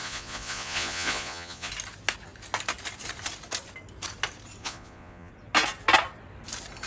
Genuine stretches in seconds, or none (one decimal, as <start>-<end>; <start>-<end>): 1.7-4.6; 5.3-6.9

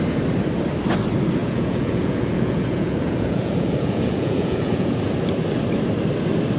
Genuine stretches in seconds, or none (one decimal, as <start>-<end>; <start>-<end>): 0.0-1.4; 5.0-6.6